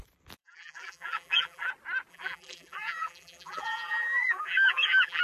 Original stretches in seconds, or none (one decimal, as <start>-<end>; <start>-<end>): 0.0-0.4; 1.7-2.1